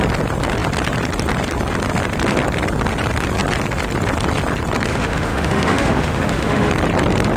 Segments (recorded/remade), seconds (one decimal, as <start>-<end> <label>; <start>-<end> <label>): 0.0-4.9 recorded; 4.9-6.7 remade; 6.7-7.4 recorded

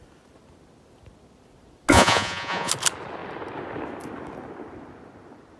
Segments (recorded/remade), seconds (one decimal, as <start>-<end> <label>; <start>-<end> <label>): 0.0-1.9 recorded; 1.9-2.7 remade; 2.7-5.6 recorded

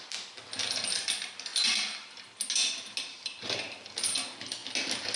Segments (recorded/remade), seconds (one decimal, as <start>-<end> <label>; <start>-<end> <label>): 0.0-5.2 recorded

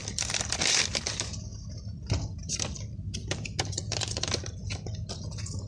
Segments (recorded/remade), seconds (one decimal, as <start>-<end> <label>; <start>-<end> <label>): 0.0-5.7 recorded

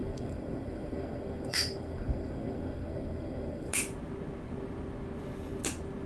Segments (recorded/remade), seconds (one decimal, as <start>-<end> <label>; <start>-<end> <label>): 0.0-3.7 remade; 3.7-6.1 recorded